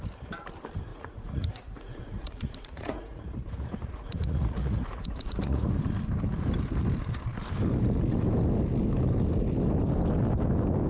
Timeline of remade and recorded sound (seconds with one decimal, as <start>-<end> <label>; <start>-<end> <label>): 0.0-0.9 recorded; 0.9-5.7 remade; 5.7-10.9 recorded